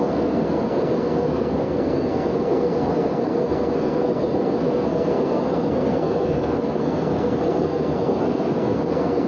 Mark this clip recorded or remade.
remade